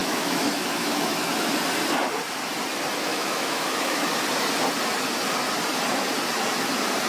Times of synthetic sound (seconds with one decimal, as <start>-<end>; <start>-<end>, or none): 0.0-1.5; 3.1-4.1